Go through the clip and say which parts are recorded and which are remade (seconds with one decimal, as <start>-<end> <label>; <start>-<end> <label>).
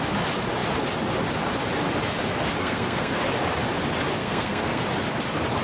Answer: 0.0-2.6 recorded; 2.6-3.2 remade; 3.2-4.2 recorded; 4.2-4.8 remade; 4.8-5.6 recorded